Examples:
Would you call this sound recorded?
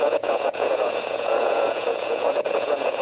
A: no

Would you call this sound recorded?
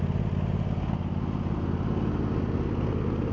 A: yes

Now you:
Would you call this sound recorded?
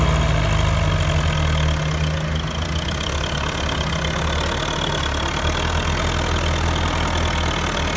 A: yes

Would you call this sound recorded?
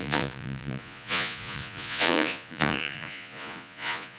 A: no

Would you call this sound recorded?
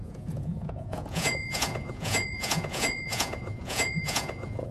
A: no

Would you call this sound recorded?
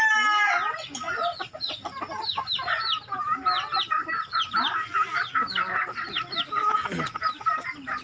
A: yes